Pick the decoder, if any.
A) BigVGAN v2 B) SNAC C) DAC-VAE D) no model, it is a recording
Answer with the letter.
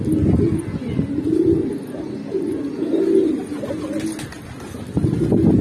D